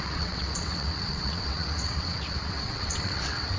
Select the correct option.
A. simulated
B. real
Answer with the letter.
A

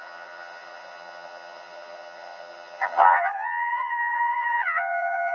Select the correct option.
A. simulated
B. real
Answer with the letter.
A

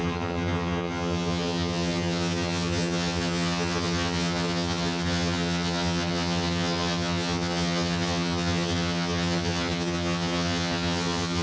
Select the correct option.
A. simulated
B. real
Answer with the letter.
A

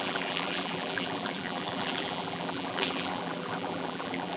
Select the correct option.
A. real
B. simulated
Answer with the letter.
B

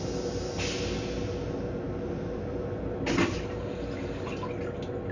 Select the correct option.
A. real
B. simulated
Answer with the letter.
A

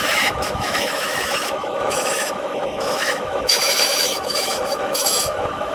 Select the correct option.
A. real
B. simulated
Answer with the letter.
B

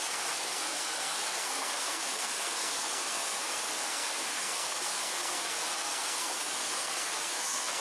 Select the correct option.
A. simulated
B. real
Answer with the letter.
A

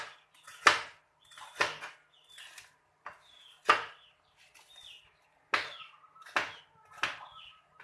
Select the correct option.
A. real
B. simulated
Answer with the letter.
A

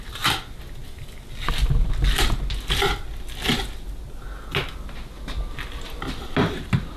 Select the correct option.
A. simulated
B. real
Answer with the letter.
B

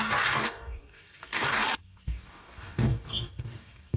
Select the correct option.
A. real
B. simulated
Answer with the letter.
B